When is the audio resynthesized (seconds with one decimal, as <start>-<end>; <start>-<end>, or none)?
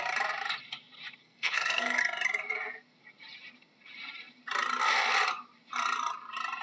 1.2-2.0